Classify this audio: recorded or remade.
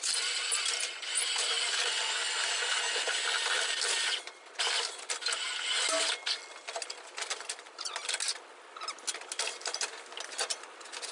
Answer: recorded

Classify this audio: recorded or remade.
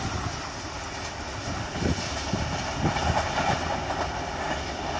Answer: recorded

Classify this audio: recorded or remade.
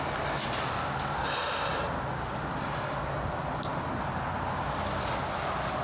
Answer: recorded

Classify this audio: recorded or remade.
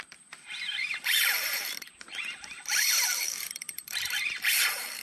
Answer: remade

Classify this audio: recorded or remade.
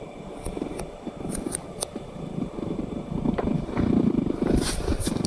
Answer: remade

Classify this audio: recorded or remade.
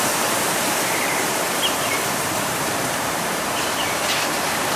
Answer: remade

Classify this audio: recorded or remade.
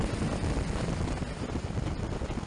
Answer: recorded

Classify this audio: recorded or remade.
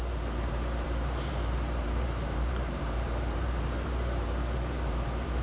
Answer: remade